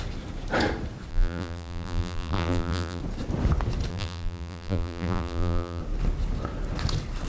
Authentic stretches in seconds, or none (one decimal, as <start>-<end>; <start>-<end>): 0.0-1.1; 3.0-3.9; 5.8-7.3